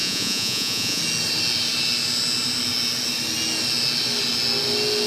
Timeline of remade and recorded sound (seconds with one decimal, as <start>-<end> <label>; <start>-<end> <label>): 0.0-1.0 remade; 1.0-5.1 recorded